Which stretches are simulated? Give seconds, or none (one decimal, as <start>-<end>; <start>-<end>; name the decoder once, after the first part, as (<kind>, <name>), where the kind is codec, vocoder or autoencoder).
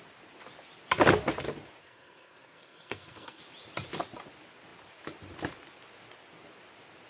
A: 1.8-3.4 (codec, SNAC)